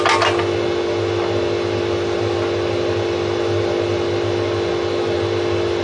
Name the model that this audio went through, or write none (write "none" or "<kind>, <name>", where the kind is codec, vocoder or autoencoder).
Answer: none